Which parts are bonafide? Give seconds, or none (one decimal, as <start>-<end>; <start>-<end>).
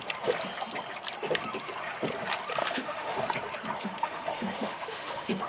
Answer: 0.0-2.6; 3.2-3.8